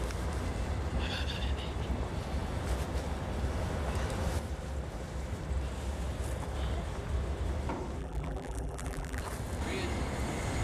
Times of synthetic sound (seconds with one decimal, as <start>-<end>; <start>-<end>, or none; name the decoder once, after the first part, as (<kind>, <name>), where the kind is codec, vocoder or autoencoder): 8.0-9.2 (vocoder, BigVGAN v2)